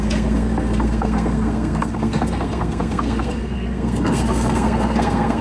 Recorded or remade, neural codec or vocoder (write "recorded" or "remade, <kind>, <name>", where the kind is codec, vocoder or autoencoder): remade, codec, SNAC